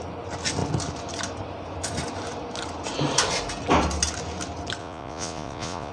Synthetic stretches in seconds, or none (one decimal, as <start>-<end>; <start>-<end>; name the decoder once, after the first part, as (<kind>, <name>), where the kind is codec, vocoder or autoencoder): 4.8-5.9 (vocoder, Vocos)

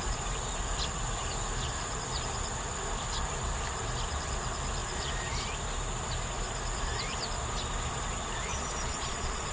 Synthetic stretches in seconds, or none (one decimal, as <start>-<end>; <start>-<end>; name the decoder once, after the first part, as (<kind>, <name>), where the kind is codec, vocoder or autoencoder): 8.5-9.5 (vocoder, Vocos)

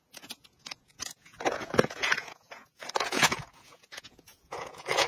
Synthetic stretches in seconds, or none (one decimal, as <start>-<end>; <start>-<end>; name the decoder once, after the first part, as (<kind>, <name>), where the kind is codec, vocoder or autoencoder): 0.0-5.1 (vocoder, Vocos)

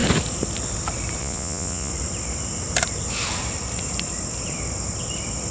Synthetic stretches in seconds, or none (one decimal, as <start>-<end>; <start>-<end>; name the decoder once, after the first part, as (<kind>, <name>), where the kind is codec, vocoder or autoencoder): 1.2-1.9 (vocoder, Vocos)

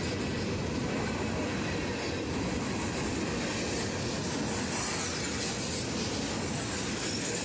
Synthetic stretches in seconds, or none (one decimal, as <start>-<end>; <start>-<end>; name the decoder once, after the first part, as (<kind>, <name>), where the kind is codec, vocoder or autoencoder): none